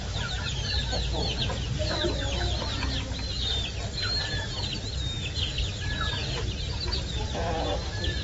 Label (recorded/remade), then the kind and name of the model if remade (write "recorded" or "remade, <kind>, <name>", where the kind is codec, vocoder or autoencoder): recorded